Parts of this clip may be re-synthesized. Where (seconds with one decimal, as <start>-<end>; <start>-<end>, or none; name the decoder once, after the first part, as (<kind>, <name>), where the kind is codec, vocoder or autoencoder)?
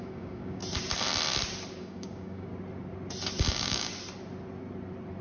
0.0-0.6 (codec, DAC); 1.8-2.5; 3.5-3.9